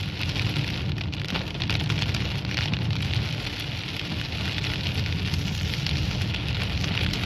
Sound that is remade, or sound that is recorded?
recorded